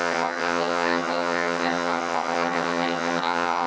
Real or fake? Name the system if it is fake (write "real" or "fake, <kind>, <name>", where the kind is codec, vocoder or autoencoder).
fake, vocoder, HiFi-GAN